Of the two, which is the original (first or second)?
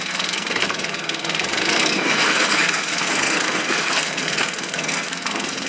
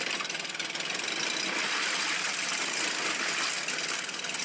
second